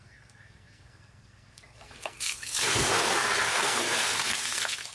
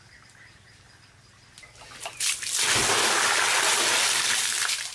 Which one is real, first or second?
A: second